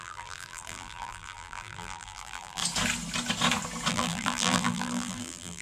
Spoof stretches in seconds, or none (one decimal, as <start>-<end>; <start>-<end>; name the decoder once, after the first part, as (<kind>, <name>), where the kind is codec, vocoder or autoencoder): 0.0-2.6 (vocoder, BigVGAN v2); 3.9-5.6